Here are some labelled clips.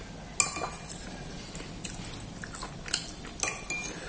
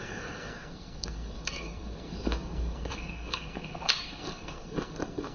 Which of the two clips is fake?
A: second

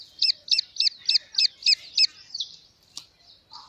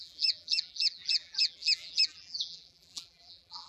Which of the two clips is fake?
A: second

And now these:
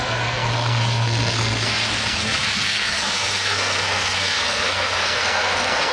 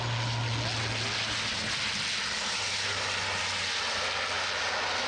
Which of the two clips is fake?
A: first